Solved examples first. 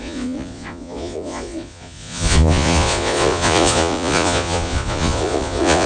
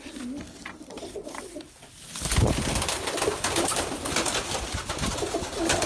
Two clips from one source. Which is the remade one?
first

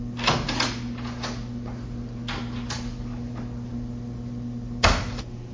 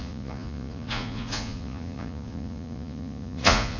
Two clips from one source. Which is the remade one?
second